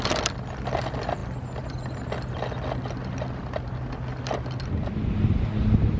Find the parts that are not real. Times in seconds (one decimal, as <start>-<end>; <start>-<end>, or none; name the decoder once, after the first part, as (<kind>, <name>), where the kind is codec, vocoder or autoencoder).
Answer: none